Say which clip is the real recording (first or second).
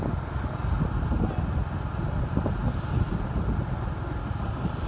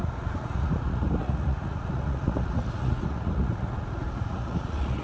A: first